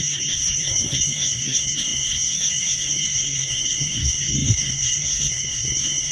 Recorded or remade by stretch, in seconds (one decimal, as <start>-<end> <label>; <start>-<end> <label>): 0.0-6.1 remade